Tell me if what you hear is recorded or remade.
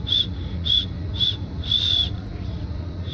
remade